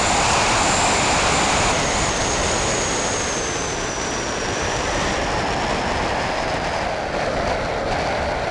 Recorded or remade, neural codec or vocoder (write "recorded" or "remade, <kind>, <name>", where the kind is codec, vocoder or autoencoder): recorded